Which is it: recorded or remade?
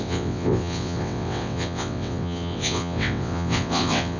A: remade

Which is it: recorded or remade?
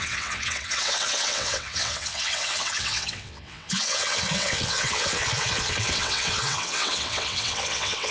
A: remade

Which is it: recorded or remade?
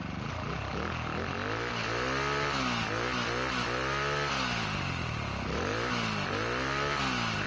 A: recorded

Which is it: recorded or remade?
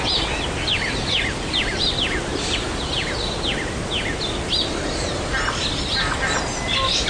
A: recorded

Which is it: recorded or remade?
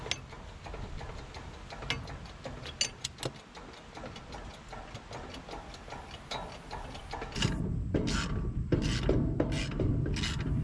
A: recorded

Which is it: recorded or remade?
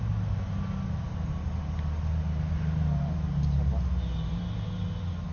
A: recorded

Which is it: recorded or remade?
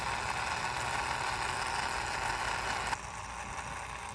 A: recorded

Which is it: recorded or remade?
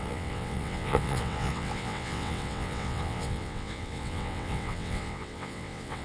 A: remade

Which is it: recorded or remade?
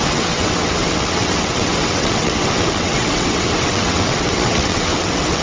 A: remade